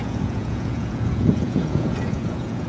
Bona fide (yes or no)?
no